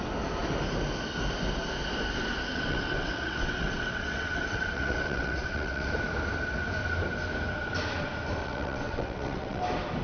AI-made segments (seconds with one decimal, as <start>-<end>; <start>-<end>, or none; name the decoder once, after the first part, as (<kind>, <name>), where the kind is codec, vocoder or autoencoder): 2.5-5.9 (vocoder, WaveNeXt); 8.4-9.6